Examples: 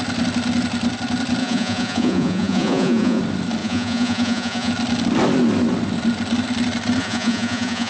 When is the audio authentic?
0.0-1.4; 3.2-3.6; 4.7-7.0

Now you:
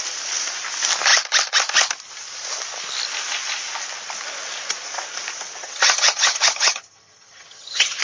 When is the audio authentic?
0.0-5.6

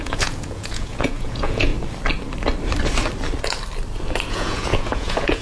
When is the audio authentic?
1.7-4.3

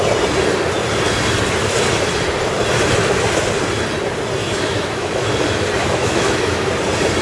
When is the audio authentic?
0.0-4.4; 5.3-5.8; 6.7-7.2